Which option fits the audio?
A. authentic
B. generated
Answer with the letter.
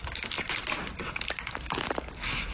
A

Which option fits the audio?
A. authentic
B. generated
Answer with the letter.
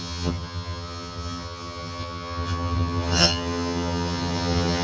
B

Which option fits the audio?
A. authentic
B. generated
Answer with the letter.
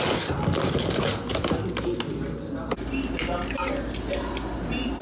A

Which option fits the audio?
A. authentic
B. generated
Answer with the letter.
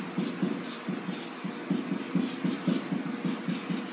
A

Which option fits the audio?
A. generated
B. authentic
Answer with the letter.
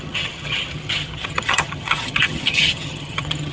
A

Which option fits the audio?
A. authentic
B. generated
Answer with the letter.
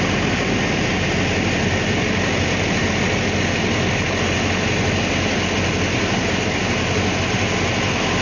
A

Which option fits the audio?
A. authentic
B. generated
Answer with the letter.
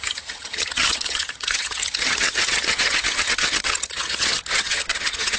B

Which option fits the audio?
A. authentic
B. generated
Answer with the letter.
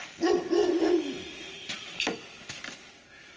A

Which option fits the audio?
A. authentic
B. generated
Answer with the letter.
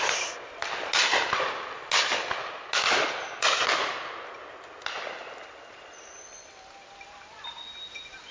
A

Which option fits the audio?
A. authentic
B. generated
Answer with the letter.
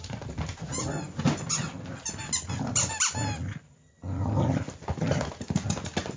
A